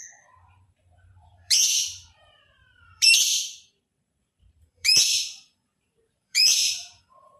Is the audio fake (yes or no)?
yes